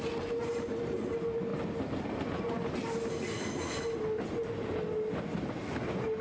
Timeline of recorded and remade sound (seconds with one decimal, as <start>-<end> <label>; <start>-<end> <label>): 0.0-6.2 recorded